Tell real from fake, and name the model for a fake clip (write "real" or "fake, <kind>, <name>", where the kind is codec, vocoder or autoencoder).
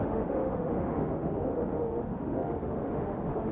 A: fake, autoencoder, DAC-VAE